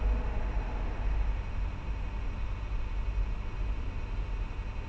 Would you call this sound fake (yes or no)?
no